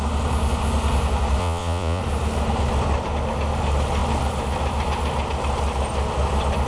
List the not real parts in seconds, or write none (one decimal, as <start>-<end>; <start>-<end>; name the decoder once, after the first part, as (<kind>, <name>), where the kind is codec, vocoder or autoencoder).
1.4-2.0 (vocoder, Vocos)

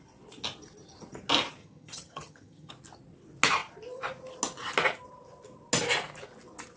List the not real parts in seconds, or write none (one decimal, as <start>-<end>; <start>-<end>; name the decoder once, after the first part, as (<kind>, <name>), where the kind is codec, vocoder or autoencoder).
1.6-2.7 (vocoder, HiFi-GAN)

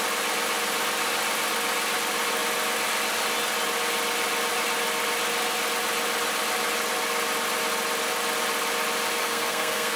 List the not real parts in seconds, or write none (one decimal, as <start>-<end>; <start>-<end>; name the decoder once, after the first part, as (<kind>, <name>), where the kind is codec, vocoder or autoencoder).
9.2-10.0 (codec, SNAC)

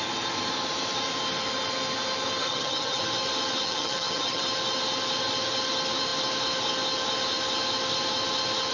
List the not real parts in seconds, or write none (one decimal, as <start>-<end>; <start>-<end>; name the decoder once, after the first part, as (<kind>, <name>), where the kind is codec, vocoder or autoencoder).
2.4-3.0 (vocoder, HiFi-GAN); 3.6-4.4

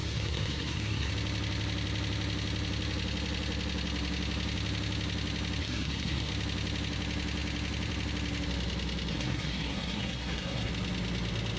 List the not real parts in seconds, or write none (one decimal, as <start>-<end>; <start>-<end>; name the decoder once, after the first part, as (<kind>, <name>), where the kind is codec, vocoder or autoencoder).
0.0-1.1 (codec, SNAC); 5.6-6.3; 9.1-10.7